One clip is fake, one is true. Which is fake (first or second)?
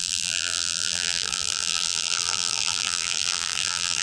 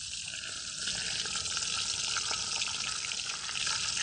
first